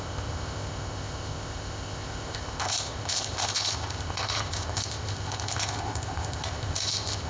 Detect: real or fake fake